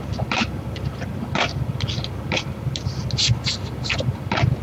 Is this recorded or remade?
recorded